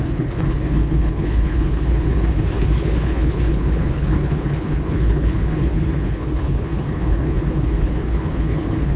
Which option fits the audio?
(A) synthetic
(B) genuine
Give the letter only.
A